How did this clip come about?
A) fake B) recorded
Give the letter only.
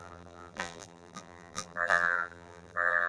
A